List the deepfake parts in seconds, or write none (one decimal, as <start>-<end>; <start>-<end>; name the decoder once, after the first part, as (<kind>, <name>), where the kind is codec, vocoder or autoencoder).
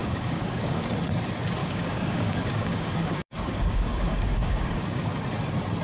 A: 0.0-0.8 (codec, DAC); 1.6-5.1